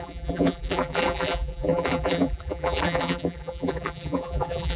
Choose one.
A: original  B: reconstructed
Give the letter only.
B